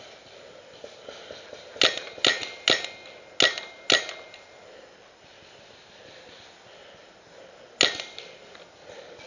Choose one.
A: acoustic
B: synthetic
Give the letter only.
A